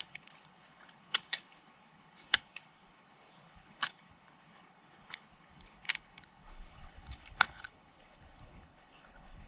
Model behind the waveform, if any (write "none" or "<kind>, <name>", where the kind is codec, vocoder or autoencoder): codec, HILCodec